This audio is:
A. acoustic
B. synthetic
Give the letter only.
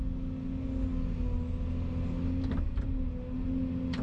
A